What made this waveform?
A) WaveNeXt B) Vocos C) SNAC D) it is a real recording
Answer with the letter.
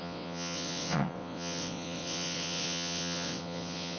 A